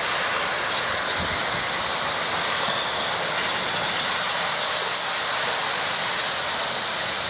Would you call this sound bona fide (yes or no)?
yes